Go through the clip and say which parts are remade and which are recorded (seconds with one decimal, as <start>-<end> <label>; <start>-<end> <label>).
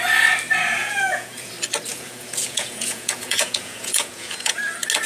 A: 0.0-0.8 recorded; 0.8-1.5 remade; 1.5-1.9 recorded; 1.9-4.6 remade; 4.6-5.1 recorded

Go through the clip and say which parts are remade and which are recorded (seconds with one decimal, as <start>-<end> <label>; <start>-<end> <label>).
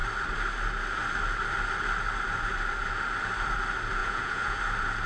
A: 0.0-4.0 recorded; 4.0-4.6 remade; 4.6-5.1 recorded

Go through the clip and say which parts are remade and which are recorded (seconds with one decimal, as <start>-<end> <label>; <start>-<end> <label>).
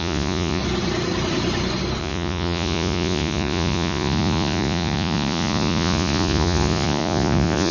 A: 0.0-0.6 remade; 0.6-2.0 recorded; 2.0-7.7 remade